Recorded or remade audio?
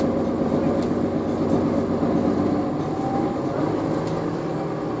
recorded